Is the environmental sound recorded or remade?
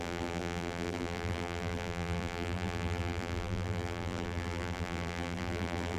remade